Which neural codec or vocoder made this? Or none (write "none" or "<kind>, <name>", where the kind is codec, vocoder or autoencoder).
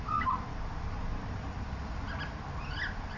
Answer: none